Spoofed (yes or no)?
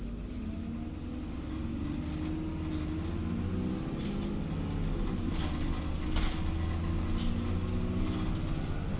no